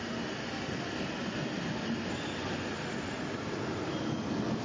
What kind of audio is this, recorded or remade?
recorded